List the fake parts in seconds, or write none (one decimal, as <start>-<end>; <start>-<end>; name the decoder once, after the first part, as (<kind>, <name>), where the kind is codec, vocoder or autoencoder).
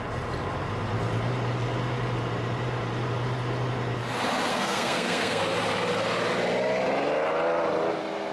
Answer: 4.5-5.4 (codec, SNAC)